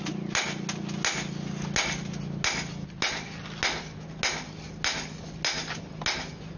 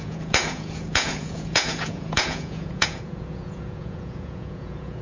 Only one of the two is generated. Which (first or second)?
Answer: second